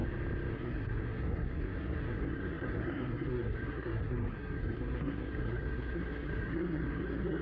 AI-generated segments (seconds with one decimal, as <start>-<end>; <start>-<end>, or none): 0.5-7.4